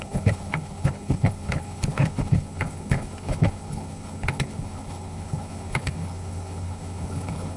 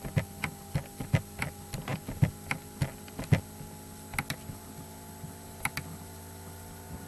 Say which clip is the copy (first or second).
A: first